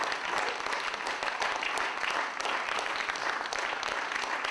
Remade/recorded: recorded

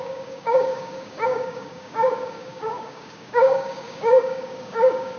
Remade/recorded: remade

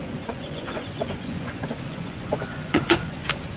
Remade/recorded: remade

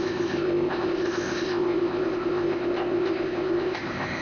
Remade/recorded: remade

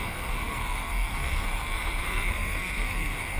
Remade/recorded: remade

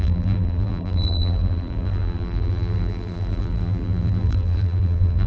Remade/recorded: remade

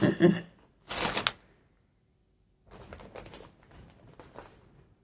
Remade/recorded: recorded